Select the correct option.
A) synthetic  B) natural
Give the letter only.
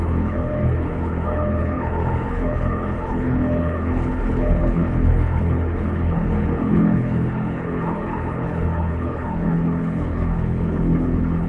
A